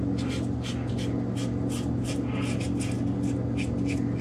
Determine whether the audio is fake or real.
real